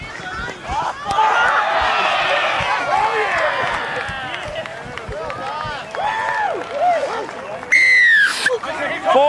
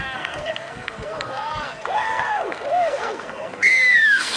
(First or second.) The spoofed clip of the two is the second